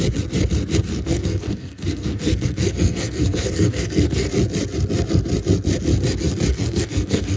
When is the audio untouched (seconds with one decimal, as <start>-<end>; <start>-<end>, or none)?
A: 0.0-0.9; 4.3-6.5